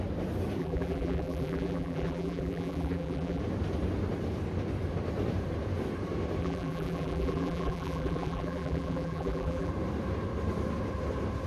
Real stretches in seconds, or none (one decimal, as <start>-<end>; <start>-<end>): 0.0-0.6; 3.4-6.4; 9.7-11.5